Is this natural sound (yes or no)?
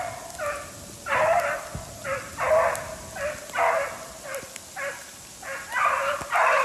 yes